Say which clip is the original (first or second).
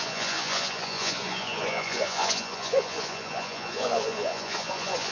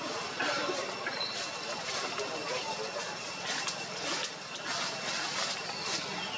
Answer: second